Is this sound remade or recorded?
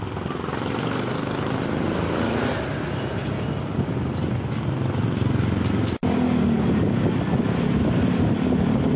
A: recorded